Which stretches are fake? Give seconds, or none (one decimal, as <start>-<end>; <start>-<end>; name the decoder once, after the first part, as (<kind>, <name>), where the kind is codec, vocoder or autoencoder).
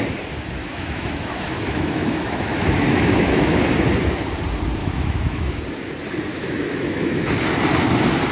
0.6-3.6 (autoencoder, DAC-VAE); 4.8-5.6; 6.3-7.3